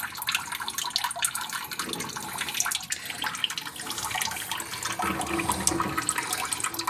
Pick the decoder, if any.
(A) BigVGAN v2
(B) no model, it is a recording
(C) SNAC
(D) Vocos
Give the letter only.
B